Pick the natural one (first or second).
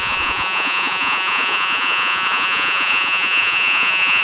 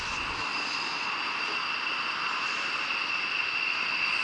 second